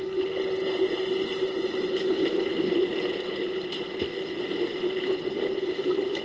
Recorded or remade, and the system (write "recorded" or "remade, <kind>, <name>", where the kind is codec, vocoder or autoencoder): recorded